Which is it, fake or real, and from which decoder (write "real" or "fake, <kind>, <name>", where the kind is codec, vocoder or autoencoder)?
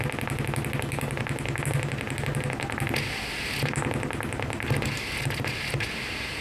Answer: real